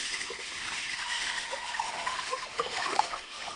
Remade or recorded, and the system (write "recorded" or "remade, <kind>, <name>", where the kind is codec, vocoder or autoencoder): remade, autoencoder, DAC-VAE